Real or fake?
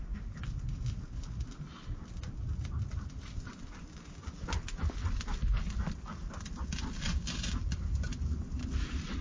real